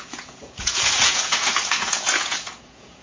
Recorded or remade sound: remade